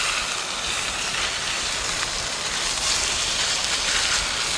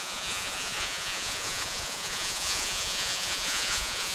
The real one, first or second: first